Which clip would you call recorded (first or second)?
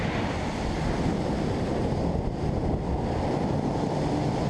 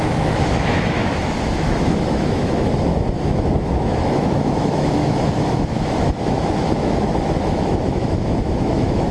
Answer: first